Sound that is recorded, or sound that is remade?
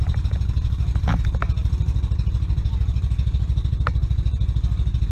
recorded